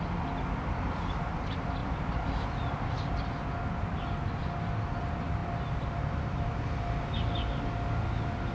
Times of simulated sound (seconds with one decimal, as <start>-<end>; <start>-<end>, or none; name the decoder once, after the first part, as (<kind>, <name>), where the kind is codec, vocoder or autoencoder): 1.8-3.1 (vocoder, BigVGAN v2); 5.4-6.5